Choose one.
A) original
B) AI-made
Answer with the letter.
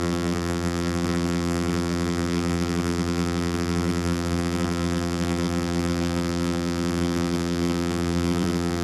B